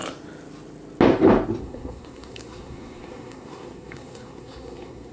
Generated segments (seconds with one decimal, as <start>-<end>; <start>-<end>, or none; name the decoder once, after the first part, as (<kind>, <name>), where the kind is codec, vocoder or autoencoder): 1.6-5.1 (codec, SNAC)